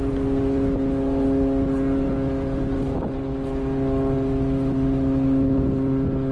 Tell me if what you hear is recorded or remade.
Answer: recorded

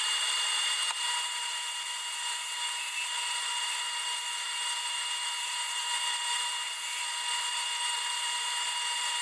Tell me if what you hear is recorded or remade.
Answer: remade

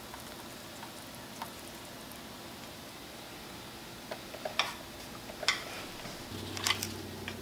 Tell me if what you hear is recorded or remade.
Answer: recorded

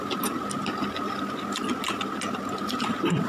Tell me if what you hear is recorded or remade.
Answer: recorded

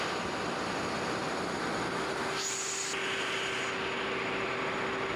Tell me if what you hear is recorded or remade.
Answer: recorded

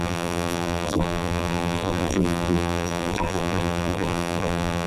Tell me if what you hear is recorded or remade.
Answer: remade